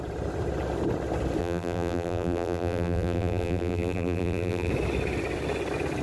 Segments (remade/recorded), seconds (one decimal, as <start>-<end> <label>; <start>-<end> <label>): 0.0-1.4 recorded; 1.4-4.7 remade; 4.7-6.0 recorded